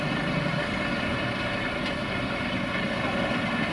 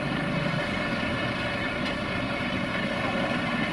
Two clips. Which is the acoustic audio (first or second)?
first